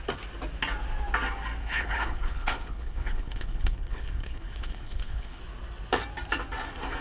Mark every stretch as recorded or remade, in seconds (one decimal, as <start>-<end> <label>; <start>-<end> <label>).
0.0-1.6 recorded; 1.6-5.4 remade; 5.4-7.0 recorded